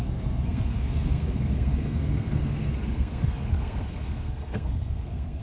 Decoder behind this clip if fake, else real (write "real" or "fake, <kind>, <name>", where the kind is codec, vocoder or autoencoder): fake, codec, SNAC